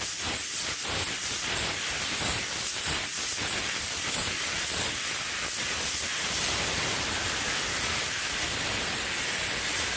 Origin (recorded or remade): remade